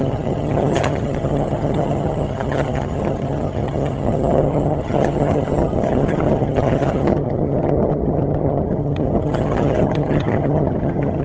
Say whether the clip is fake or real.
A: fake